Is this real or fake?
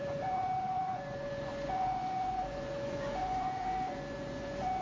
fake